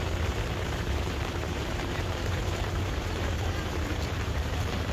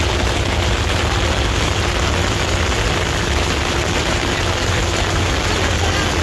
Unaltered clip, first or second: second